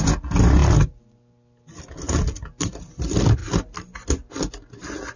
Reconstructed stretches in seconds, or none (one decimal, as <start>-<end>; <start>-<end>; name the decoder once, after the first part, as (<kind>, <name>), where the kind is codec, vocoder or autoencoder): none